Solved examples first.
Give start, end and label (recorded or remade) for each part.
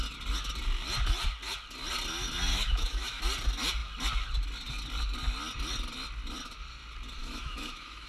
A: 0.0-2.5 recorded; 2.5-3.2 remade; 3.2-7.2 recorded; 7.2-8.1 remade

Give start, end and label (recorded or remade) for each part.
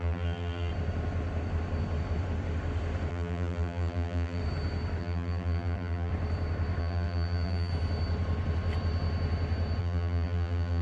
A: 0.0-0.7 remade; 0.7-3.1 recorded; 3.1-4.4 remade; 4.4-5.0 recorded; 5.0-6.1 remade; 6.1-6.8 recorded; 6.8-7.7 remade; 7.7-9.8 recorded; 9.8-10.8 remade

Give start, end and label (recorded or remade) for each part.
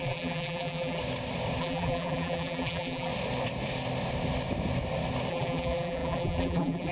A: 0.0-1.0 remade; 1.0-1.6 recorded; 1.6-3.1 remade; 3.1-5.3 recorded; 5.3-6.9 remade